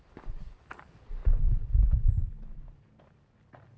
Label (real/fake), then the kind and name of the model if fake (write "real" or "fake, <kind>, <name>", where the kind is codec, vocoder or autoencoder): fake, vocoder, BigVGAN v2